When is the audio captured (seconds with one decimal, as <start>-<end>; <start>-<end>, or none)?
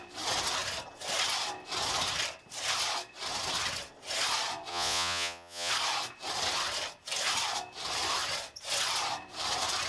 0.0-4.7; 5.7-9.9